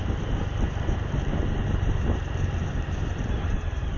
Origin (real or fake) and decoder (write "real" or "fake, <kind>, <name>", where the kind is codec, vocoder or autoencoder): fake, vocoder, BigVGAN v2